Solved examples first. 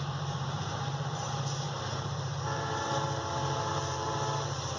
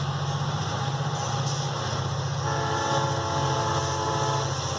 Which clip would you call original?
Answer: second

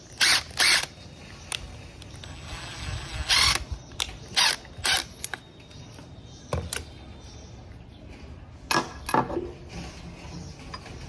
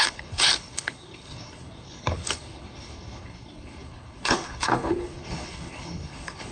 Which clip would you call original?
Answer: first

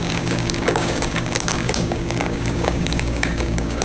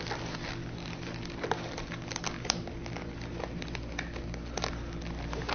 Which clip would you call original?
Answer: second